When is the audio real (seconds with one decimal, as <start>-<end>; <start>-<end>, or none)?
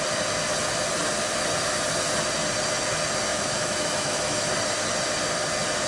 0.0-3.3; 4.4-5.9